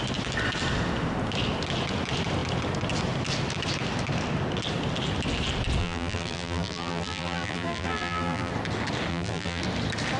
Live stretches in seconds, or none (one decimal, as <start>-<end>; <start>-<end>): 0.0-5.8; 8.5-9.1; 9.6-10.2